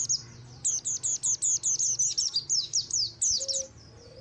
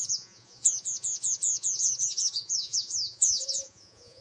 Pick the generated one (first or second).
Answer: second